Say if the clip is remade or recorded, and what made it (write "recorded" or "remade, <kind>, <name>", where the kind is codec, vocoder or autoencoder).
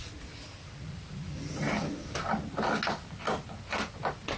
recorded